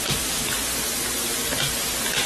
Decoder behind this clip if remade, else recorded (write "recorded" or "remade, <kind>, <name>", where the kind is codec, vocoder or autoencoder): recorded